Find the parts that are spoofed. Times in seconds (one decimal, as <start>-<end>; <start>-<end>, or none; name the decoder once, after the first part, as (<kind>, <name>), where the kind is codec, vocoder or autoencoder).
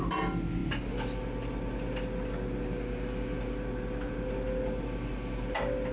none